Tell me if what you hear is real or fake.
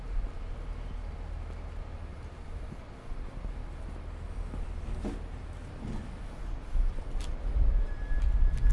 real